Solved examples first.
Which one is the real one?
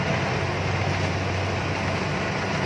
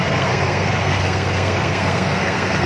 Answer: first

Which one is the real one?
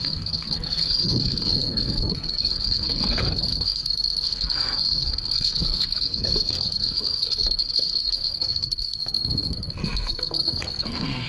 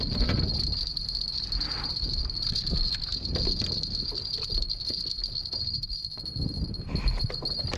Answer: second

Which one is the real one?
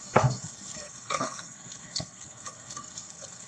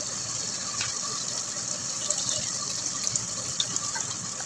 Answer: second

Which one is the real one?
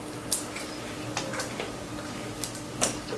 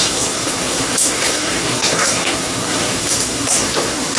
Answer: first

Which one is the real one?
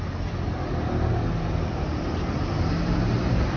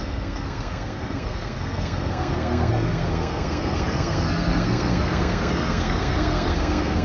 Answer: first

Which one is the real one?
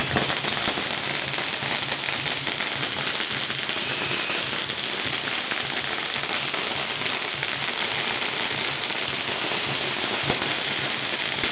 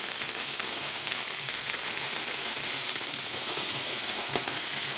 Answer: first